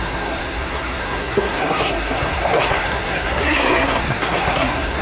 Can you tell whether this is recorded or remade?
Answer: remade